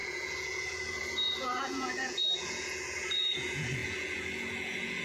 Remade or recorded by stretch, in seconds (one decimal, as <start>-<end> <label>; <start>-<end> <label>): 0.0-5.0 remade